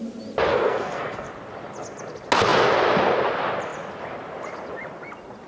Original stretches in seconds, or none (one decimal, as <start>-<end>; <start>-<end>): 0.0-0.5; 1.3-5.5